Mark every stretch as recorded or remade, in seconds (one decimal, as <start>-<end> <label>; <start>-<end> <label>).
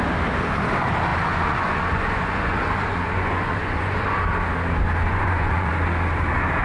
0.0-1.1 recorded; 1.1-4.2 remade; 4.2-5.1 recorded; 5.1-5.7 remade; 5.7-6.6 recorded